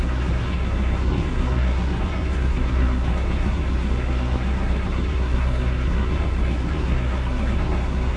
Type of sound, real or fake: fake